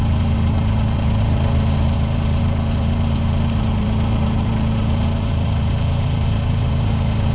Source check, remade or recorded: remade